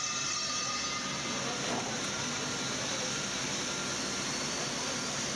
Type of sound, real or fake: real